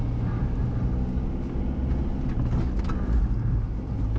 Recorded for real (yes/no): yes